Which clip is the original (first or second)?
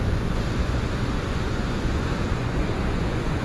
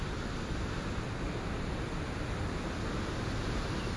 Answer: second